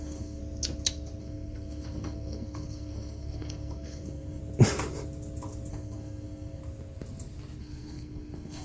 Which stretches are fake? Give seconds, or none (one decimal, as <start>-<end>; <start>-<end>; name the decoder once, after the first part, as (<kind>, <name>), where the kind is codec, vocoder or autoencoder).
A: 0.0-0.4 (codec, SNAC); 1.2-4.4; 5.7-6.6; 7.6-8.6